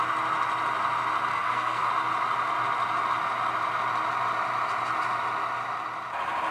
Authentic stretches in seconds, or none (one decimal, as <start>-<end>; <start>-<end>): 0.0-1.3; 1.9-6.5